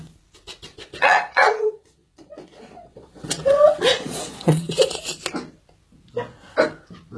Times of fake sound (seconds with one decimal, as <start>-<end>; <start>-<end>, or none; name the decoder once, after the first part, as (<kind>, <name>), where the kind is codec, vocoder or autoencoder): 0.7-5.0 (vocoder, Vocos)